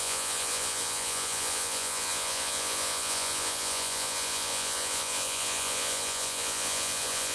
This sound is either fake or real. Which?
fake